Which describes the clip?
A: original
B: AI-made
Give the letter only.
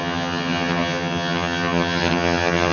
B